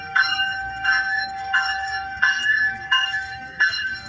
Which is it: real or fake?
fake